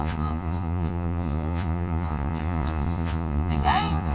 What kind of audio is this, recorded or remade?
remade